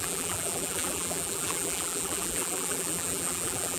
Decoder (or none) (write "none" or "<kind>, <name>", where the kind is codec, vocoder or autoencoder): vocoder, BigVGAN v2